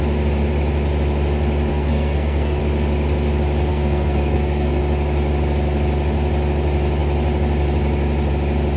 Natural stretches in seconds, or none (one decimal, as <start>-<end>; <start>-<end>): 0.0-1.7; 2.6-3.7; 4.8-8.8

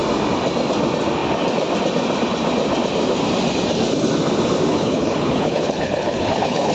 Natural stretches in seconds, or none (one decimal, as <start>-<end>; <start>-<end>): 0.0-4.7